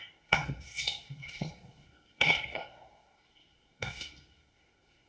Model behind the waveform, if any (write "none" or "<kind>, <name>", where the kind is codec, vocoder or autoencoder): codec, SNAC